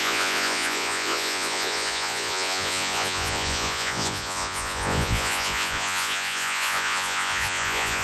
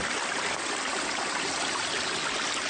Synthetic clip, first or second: first